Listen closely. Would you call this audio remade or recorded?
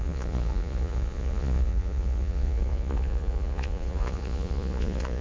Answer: remade